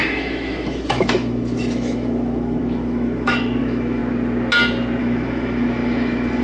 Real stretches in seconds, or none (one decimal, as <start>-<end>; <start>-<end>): 4.0-5.0